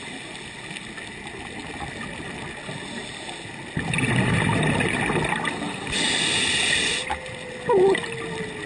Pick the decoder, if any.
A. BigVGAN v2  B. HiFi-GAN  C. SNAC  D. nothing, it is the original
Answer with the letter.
D